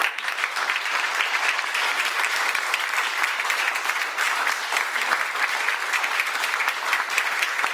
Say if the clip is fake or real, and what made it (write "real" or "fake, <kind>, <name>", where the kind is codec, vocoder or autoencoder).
fake, vocoder, BigVGAN v2